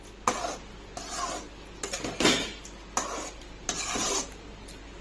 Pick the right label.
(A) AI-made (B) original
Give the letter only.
B